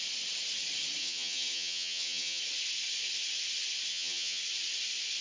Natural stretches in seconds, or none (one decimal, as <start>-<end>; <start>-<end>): 0.0-1.0; 2.4-3.9; 4.4-5.2